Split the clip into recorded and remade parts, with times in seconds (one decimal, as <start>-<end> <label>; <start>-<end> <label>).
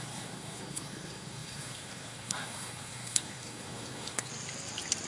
0.0-4.3 remade; 4.3-5.1 recorded